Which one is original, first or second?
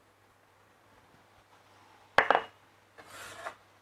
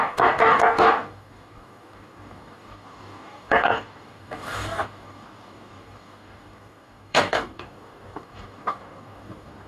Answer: first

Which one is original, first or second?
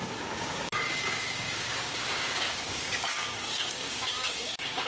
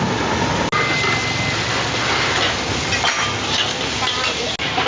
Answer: second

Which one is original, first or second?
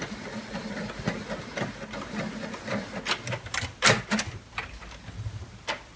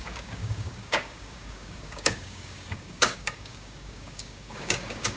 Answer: first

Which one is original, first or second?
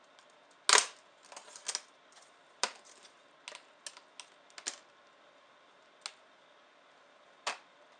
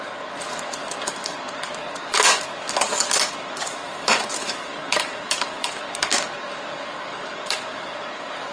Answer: first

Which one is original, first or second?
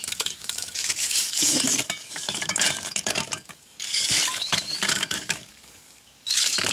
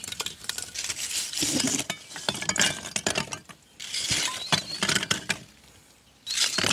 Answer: second